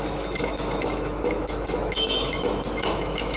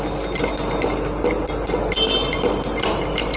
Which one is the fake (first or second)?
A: first